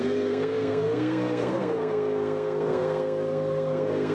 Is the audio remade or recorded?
remade